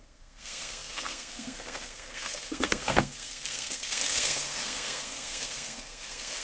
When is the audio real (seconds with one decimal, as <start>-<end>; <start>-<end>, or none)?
none